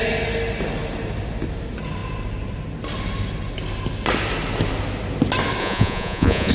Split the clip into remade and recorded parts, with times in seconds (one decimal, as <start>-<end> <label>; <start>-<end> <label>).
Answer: 0.0-5.6 recorded; 5.6-6.5 remade